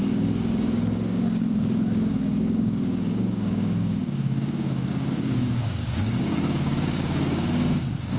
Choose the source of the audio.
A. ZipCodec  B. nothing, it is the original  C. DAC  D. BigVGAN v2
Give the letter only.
C